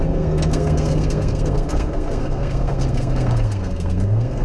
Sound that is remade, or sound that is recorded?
remade